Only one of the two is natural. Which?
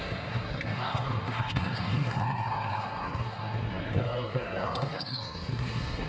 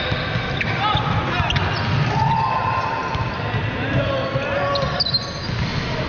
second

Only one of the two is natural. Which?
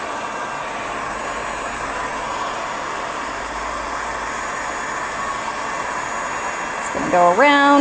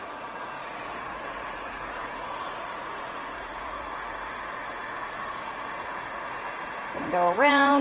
first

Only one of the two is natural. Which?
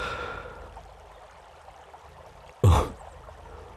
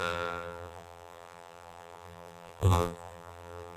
first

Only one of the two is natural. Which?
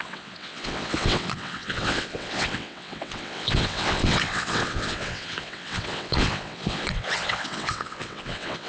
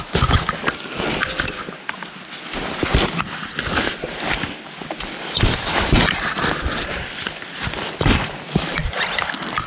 second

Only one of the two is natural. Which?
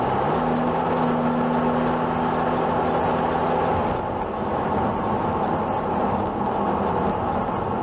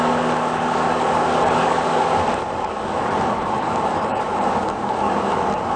first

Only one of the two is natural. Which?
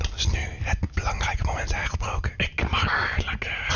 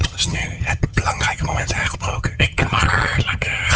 first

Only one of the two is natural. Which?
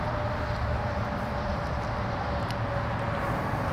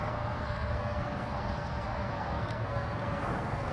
first